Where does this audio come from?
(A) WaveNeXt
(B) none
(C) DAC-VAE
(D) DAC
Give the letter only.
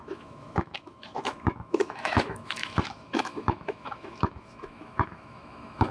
C